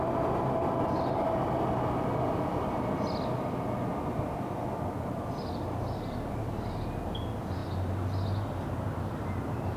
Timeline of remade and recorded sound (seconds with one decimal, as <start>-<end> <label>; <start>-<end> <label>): 0.0-9.8 recorded